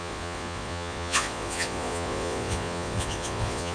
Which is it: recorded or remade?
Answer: remade